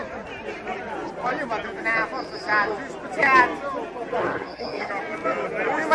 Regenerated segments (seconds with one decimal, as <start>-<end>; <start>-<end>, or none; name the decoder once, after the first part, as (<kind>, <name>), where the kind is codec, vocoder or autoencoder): 4.2-4.9 (codec, SNAC)